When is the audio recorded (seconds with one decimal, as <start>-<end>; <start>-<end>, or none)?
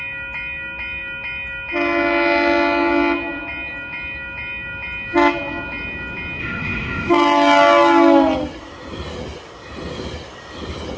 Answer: 0.0-6.4; 7.1-11.0